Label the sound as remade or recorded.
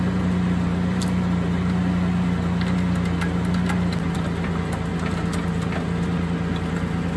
recorded